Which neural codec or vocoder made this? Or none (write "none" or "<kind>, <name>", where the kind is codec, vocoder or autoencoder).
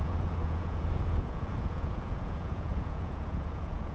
vocoder, Vocos